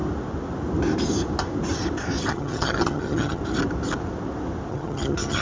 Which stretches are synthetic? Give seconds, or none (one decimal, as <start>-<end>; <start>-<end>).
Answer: 2.3-3.4; 4.7-5.4